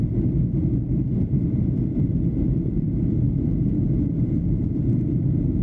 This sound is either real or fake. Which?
fake